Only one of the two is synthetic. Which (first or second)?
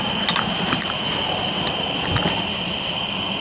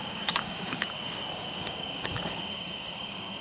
second